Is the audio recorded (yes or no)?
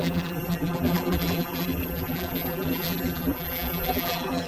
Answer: no